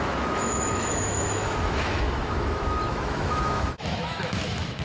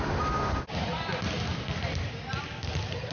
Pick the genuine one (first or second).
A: second